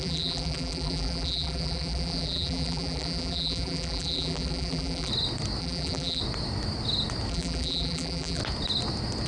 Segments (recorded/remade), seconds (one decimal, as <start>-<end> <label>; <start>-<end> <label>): 0.0-5.1 remade; 5.1-5.6 recorded; 5.6-6.2 remade; 6.2-7.3 recorded; 7.3-8.4 remade; 8.4-9.3 recorded